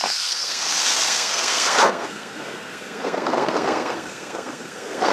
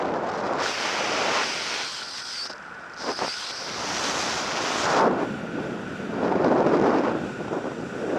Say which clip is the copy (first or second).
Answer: first